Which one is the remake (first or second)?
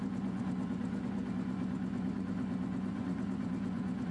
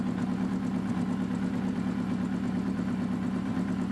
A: first